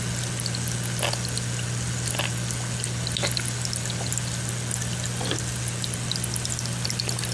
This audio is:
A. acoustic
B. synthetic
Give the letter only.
A